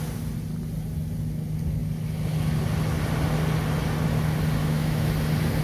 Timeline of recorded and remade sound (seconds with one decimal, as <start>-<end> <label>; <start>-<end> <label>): 0.0-4.6 recorded; 4.6-5.1 remade; 5.1-5.6 recorded